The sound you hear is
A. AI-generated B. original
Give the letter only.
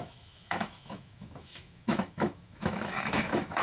A